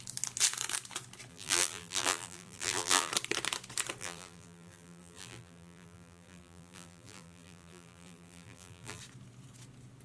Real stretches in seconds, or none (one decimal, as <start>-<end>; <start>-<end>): 0.0-1.3; 3.1-4.0; 9.0-10.0